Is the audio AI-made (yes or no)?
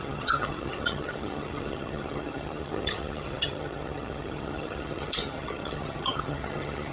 yes